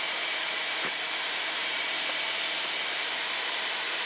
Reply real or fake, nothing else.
fake